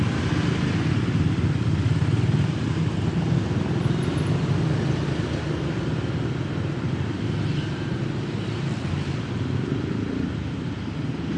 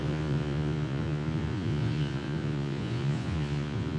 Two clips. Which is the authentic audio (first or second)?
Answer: first